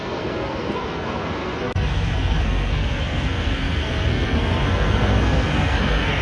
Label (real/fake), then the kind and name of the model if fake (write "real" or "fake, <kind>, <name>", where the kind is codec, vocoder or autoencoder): fake, codec, SNAC